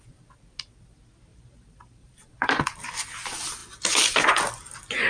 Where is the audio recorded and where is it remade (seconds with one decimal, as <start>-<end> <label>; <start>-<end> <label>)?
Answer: 0.0-1.3 recorded; 1.3-2.6 remade; 2.6-5.1 recorded